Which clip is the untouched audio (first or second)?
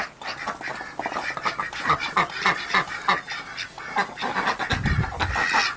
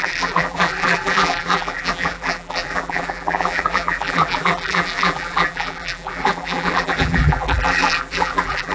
first